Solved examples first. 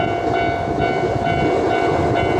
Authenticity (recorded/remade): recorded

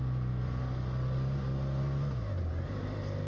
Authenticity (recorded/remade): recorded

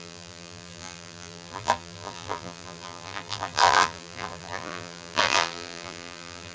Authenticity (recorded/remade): remade